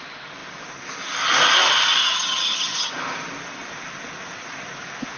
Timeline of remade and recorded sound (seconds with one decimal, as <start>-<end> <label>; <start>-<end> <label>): 0.0-2.0 recorded; 2.0-2.9 remade; 2.9-5.2 recorded